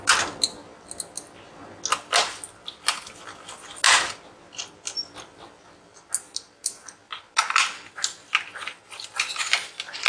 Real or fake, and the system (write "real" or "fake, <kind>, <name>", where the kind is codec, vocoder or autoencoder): real